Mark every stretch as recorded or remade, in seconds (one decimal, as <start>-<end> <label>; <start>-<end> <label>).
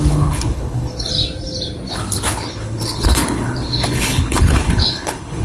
0.0-1.1 remade; 1.1-1.9 recorded; 1.9-5.4 remade